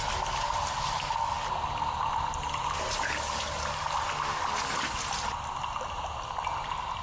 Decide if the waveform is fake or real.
real